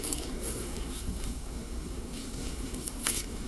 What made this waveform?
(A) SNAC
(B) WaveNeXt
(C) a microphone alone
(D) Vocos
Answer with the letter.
A